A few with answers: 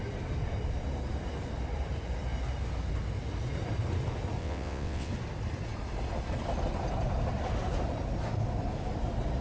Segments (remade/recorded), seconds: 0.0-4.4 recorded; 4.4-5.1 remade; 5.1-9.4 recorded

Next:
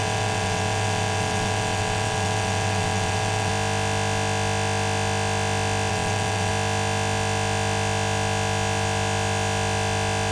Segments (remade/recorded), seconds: 0.0-3.5 remade; 3.5-5.9 recorded; 5.9-6.5 remade; 6.5-10.3 recorded

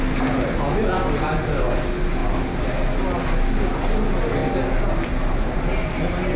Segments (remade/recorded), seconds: 0.0-6.4 recorded

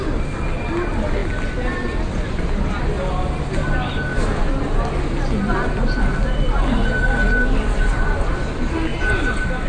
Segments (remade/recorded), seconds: 0.0-9.7 recorded